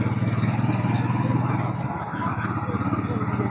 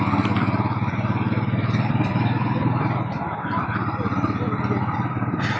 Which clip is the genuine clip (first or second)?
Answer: first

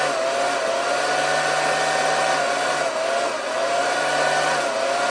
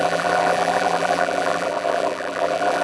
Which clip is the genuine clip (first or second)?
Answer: first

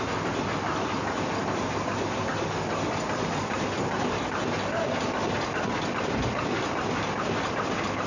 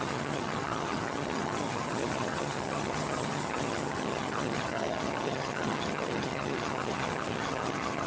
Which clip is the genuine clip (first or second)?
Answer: first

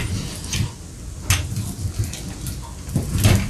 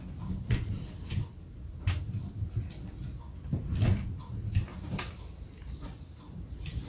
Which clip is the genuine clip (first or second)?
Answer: first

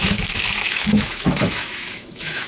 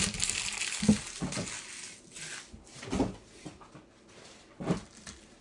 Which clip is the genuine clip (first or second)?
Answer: second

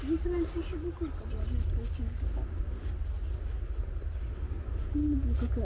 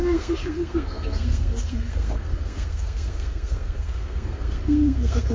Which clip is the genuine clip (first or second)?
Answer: first